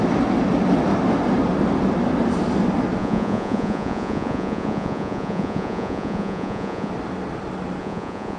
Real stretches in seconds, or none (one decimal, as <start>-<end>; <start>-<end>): 0.0-3.0; 6.9-7.8